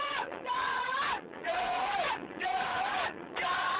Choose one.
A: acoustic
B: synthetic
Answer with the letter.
B